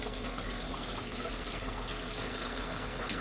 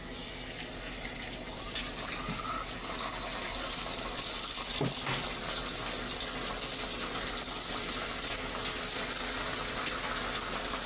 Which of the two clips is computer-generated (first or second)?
first